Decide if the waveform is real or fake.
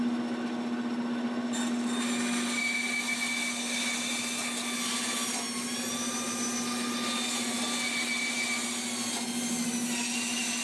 real